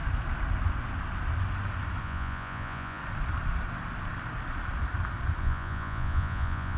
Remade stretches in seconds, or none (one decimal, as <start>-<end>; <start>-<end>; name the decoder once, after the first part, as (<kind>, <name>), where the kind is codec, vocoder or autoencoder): 2.0-3.0 (vocoder, Vocos); 5.4-6.8